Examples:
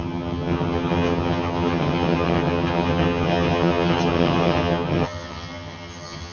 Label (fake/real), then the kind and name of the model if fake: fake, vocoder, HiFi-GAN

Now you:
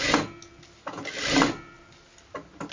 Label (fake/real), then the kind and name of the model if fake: real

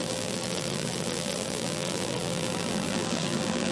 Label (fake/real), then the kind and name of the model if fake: fake, vocoder, BigVGAN v2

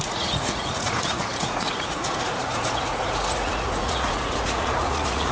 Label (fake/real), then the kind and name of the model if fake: fake, vocoder, Vocos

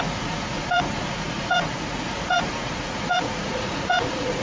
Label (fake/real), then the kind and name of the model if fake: fake, vocoder, Vocos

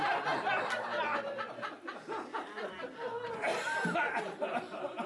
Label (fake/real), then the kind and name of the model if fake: real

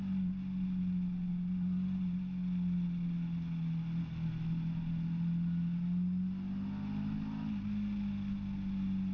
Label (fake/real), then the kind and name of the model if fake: real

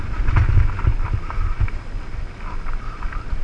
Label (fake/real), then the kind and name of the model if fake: real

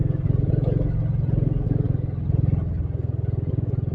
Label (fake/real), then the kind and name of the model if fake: real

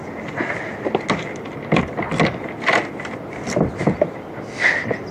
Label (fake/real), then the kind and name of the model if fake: real